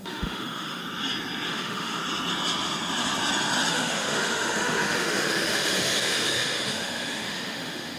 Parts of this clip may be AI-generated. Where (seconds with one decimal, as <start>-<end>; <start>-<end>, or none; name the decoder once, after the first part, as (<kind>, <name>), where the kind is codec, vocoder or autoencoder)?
0.0-0.8 (autoencoder, DAC-VAE); 1.5-2.0; 3.7-8.0

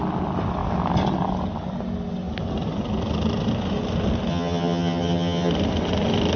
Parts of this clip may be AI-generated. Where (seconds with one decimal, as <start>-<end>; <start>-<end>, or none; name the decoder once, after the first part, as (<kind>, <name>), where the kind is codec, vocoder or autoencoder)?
4.3-5.5 (vocoder, HiFi-GAN)